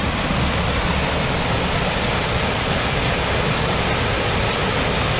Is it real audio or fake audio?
real